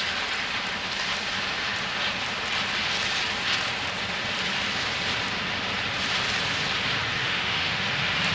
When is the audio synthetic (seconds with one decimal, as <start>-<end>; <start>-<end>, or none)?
7.2-7.9

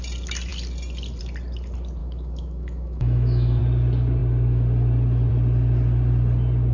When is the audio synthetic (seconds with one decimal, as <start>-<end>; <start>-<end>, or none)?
2.0-3.6